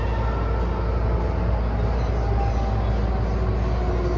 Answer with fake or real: real